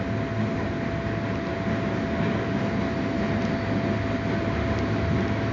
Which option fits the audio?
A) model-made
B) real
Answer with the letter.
B